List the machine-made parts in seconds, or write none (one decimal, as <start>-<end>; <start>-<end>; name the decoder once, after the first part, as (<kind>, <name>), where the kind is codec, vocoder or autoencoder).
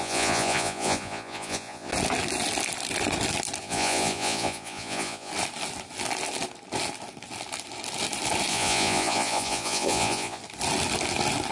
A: 0.0-1.9 (vocoder, Vocos); 3.6-5.3; 8.5-10.4